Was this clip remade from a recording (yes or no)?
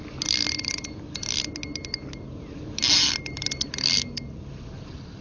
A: no